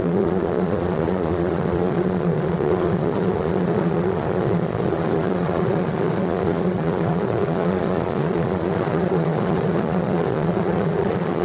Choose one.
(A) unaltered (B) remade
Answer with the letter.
B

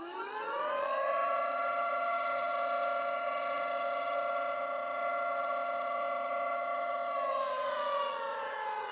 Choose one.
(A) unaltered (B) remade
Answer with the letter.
B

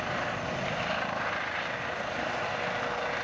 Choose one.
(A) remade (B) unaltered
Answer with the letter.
B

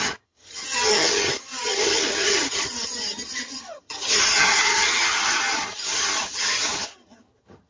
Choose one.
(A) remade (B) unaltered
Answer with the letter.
A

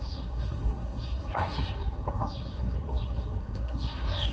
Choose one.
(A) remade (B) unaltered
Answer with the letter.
A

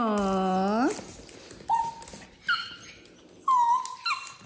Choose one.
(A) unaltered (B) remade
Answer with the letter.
A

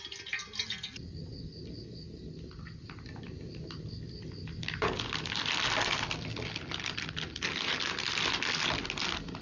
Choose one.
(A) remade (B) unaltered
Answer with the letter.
B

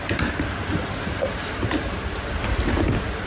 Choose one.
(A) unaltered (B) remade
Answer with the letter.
A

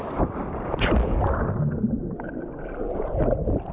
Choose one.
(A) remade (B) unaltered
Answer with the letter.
B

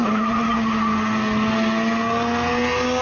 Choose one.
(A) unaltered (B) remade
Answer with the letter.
A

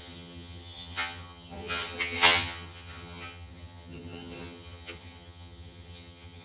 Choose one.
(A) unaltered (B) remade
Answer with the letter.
B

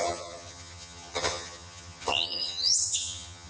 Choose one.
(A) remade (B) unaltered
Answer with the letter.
A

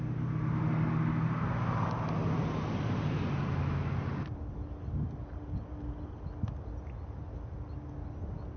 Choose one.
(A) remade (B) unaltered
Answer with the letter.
B